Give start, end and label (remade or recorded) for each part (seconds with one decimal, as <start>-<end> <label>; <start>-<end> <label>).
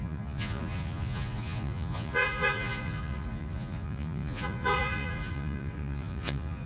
0.0-6.7 remade